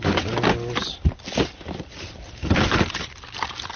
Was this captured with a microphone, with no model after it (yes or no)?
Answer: yes